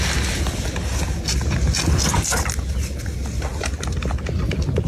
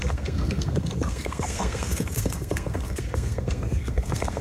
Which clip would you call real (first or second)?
first